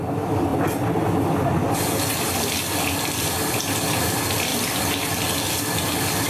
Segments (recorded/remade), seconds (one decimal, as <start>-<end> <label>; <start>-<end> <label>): 0.0-6.3 recorded